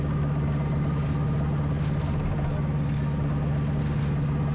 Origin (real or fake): real